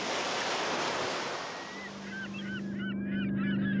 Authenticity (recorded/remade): recorded